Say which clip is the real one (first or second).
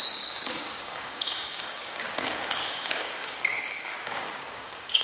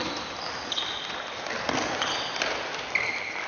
second